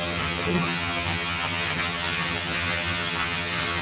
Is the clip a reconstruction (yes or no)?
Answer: yes